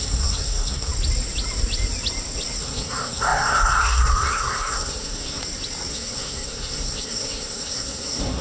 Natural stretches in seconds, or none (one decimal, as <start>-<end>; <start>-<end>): 0.9-2.6; 5.4-5.9